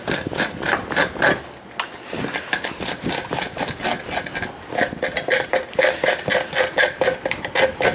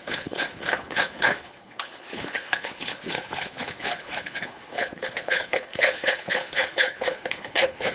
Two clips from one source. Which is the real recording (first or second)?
first